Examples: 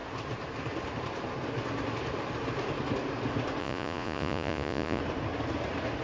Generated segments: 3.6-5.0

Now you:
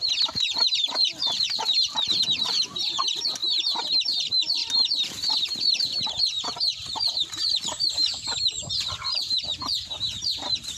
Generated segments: 0.0-3.4; 3.9-9.5; 10.0-10.8

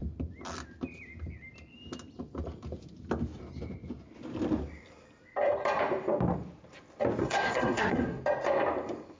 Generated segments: 7.2-8.2

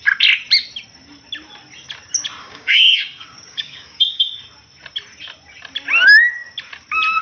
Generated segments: 2.4-4.3

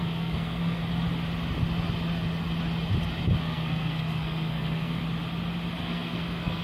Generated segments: 0.0-0.8; 3.4-5.0; 5.8-6.6

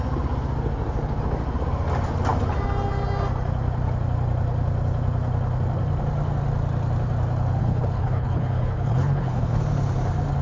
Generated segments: 7.6-9.6

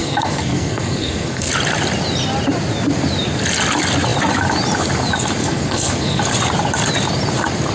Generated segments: 0.0-1.5; 5.4-6.2